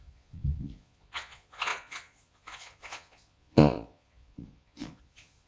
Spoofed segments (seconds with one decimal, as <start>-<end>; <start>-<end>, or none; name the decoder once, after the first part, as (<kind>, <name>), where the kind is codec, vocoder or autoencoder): 0.0-5.5 (vocoder, Vocos)